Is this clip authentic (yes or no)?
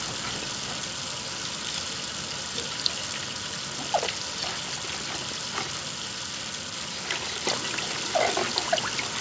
yes